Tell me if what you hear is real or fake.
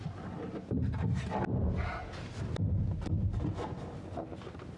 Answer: real